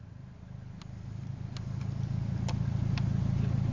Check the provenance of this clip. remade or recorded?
recorded